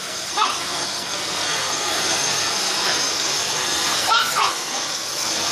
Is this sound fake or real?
fake